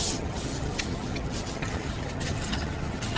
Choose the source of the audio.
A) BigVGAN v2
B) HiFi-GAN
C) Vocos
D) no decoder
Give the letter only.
B